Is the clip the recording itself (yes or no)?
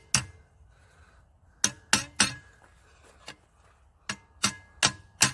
yes